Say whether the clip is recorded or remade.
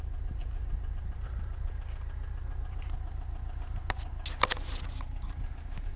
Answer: recorded